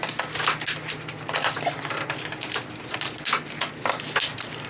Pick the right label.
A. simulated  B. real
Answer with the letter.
B